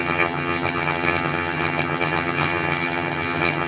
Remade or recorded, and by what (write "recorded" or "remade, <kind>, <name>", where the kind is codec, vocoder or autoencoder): remade, vocoder, HiFi-GAN